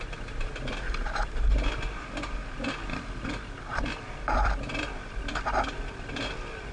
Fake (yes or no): no